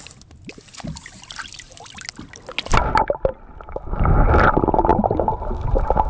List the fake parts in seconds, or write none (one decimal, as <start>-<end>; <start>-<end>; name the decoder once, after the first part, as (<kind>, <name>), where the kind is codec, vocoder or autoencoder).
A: none